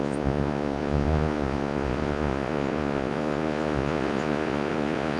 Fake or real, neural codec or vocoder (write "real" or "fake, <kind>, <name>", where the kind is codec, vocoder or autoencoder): fake, vocoder, Vocos